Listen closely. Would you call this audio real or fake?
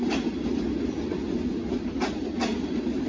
real